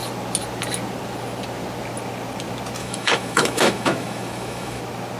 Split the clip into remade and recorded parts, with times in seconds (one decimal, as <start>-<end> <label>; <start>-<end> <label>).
0.0-2.8 recorded; 2.8-4.8 remade; 4.8-5.2 recorded